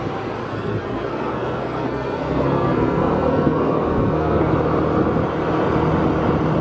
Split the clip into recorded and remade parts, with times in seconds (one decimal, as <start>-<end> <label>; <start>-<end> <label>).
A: 0.0-0.5 recorded; 0.5-4.5 remade; 4.5-6.6 recorded